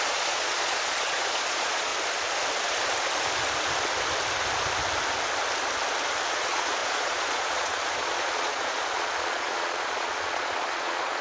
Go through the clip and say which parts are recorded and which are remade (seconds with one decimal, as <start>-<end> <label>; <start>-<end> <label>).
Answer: 0.0-1.9 remade; 1.9-6.3 recorded; 6.3-11.2 remade